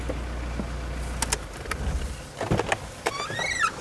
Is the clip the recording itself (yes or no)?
yes